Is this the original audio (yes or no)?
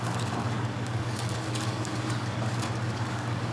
no